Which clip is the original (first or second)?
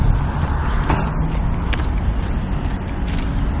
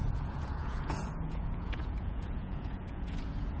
first